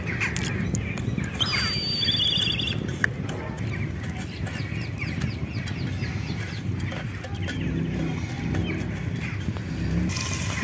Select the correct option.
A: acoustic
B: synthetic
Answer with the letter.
A